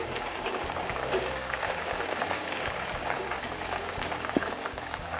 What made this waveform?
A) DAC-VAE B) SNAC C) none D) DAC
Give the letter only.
D